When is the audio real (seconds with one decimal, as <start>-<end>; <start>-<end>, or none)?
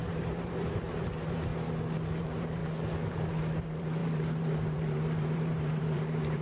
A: 1.5-2.2; 2.6-3.1